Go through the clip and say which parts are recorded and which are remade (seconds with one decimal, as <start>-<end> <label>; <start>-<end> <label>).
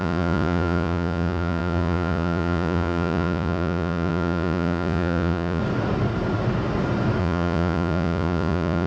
0.0-5.6 remade; 5.6-7.2 recorded; 7.2-8.9 remade